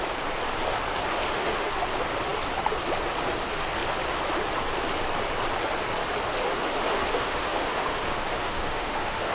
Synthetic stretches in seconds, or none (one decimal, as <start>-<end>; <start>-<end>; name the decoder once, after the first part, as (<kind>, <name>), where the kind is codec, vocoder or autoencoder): 1.1-1.8 (autoencoder, DAC-VAE); 6.4-9.3